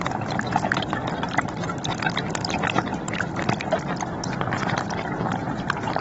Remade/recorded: recorded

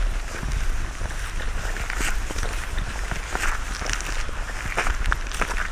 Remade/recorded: recorded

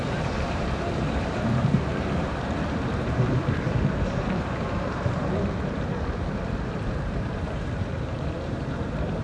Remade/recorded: remade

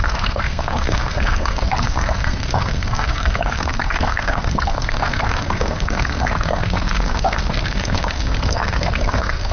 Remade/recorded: remade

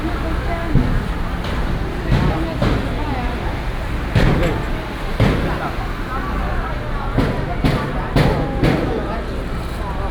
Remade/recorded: recorded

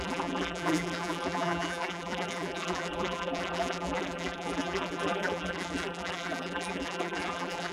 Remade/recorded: remade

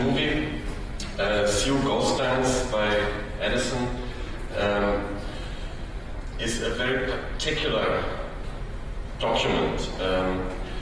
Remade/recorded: recorded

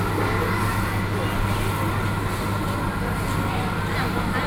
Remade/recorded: recorded